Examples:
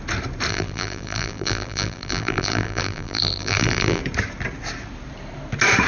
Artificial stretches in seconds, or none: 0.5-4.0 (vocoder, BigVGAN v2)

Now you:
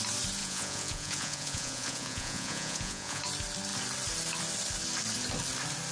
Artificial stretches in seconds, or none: 0.4-3.2 (vocoder, Vocos)

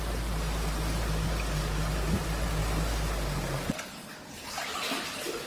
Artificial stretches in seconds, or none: none